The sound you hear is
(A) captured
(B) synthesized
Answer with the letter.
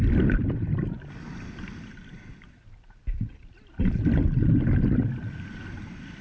A